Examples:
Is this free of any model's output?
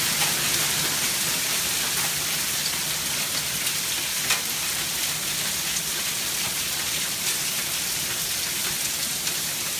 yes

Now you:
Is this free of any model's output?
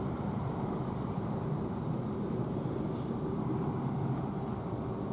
no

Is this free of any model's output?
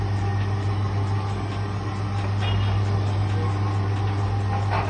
yes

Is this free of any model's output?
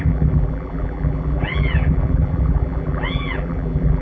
no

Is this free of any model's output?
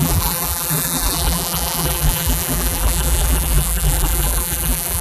no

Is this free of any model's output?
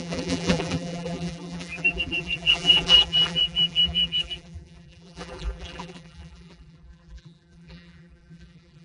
no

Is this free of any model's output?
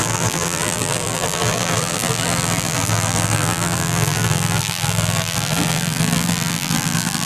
no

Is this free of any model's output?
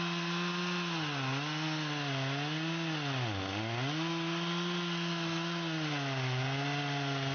yes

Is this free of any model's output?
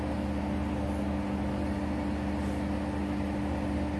yes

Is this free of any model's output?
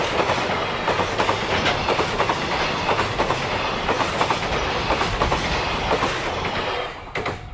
yes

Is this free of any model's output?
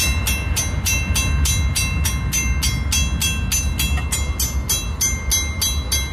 yes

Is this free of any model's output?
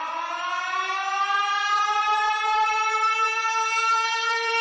no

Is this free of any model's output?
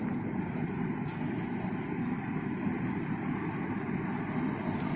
yes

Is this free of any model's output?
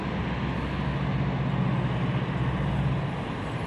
yes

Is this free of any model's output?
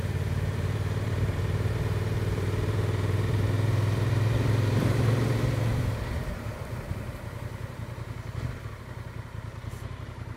no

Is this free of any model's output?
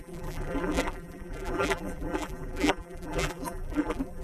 no